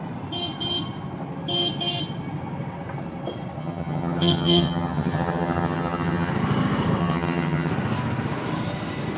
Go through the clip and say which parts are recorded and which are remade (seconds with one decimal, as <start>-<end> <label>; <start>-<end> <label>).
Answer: 0.0-3.6 recorded; 3.6-6.3 remade; 6.3-7.0 recorded; 7.0-7.7 remade; 7.7-9.2 recorded